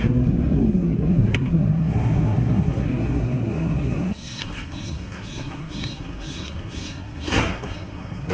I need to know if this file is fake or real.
fake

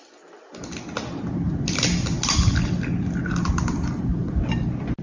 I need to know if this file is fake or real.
real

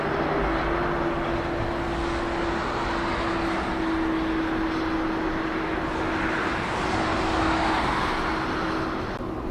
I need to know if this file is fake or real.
real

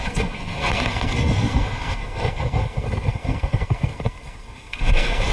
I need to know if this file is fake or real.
fake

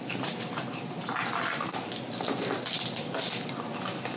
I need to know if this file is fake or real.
real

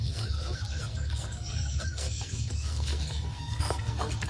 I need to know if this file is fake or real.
fake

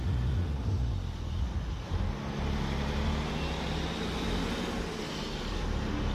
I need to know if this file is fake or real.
real